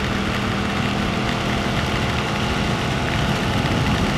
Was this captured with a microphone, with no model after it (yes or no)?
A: yes